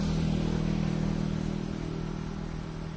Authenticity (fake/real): real